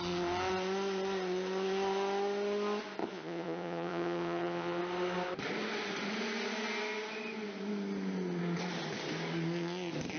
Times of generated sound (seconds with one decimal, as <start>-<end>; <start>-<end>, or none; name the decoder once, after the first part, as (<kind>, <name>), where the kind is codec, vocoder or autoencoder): 3.0-4.8 (vocoder, Vocos)

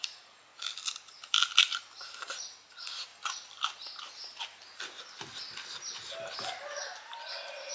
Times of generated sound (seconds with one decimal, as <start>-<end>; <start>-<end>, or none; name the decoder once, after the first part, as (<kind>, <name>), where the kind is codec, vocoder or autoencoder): 0.0-0.5 (vocoder, Vocos); 2.7-3.1

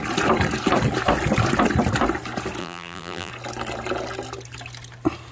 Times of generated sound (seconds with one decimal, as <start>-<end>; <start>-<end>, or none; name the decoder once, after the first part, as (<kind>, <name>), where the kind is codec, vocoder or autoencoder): 2.6-3.3 (vocoder, BigVGAN v2)

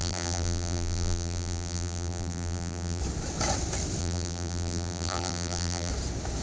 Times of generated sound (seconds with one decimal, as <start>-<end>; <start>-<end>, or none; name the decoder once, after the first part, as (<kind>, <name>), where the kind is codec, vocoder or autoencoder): 0.0-3.0 (vocoder, BigVGAN v2); 4.0-5.9